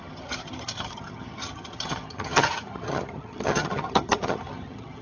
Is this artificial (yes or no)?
yes